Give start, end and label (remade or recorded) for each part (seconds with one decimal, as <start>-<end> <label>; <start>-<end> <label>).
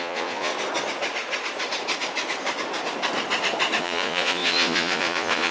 0.0-0.5 remade; 0.5-3.8 recorded; 3.8-5.5 remade